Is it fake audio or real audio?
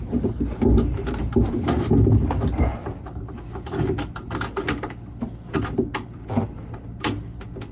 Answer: real